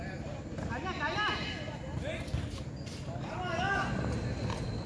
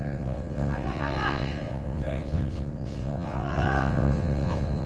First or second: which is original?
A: first